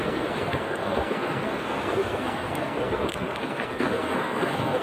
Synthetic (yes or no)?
yes